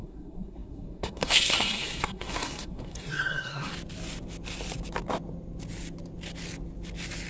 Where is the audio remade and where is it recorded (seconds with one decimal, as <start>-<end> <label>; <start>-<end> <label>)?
0.0-3.7 remade; 3.7-7.3 recorded